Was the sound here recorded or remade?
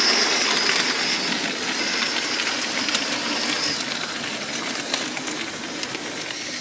recorded